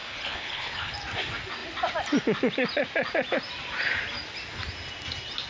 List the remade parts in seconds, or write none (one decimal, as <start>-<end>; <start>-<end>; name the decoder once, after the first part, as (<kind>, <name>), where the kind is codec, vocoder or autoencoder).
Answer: 0.0-0.9 (codec, HILCodec)

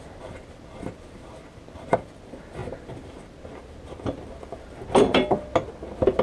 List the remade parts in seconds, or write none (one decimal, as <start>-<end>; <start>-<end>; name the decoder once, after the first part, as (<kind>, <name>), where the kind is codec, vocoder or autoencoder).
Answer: none

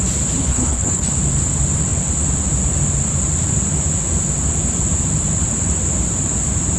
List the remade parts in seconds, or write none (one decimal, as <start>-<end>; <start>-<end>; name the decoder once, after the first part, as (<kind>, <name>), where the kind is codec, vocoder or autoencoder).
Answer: 0.4-1.1 (codec, HILCodec)

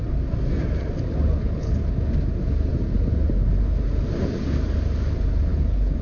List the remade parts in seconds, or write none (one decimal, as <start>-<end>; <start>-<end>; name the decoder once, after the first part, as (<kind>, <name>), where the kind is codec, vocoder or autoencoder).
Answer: 1.4-1.9 (codec, HILCodec); 5.5-6.0

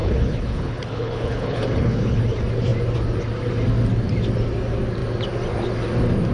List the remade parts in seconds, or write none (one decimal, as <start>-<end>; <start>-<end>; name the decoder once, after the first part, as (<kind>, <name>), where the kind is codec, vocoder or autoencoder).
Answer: 0.0-2.2 (codec, HILCodec)

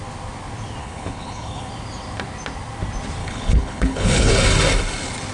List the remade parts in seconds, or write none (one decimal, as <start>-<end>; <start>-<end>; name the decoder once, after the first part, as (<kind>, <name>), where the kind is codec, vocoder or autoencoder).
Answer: 0.8-1.7 (codec, HILCodec); 3.2-4.3

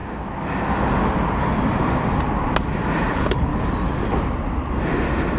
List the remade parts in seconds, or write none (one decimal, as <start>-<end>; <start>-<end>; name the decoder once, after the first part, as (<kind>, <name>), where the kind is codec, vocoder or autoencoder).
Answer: 3.1-3.5 (codec, HILCodec)